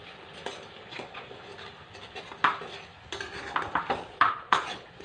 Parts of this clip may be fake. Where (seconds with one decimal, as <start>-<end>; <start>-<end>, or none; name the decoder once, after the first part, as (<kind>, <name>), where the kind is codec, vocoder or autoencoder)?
0.8-1.5 (vocoder, Vocos); 4.3-5.0